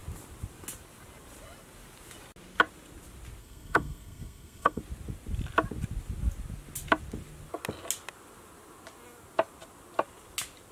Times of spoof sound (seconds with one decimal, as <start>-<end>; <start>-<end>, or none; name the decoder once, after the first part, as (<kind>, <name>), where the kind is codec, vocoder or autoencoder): 3.4-4.8 (codec, SNAC)